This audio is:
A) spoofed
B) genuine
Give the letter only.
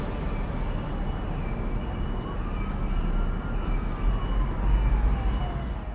B